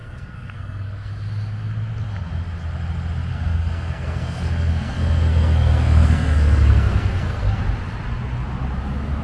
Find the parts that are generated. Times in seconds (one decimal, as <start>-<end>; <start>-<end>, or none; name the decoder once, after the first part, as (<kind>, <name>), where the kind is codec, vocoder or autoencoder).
0.0-1.1 (codec, SNAC); 3.3-7.6